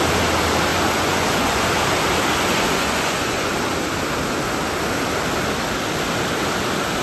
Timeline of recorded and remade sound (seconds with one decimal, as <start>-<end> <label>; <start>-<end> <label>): 0.0-0.7 recorded; 0.7-1.7 remade; 1.7-2.5 recorded; 2.5-3.5 remade; 3.5-7.0 recorded